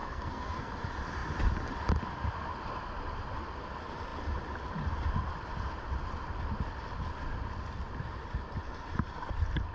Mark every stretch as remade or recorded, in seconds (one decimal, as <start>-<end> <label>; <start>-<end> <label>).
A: 0.0-0.7 remade; 0.7-9.7 recorded